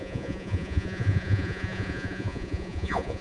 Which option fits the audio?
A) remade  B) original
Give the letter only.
A